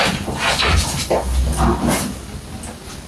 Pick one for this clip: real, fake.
real